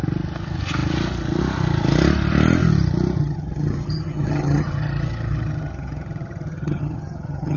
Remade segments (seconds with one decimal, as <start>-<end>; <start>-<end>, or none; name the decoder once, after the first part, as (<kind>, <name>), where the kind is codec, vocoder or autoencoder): 3.2-7.6 (vocoder, HiFi-GAN)